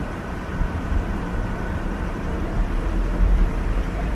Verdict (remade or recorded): remade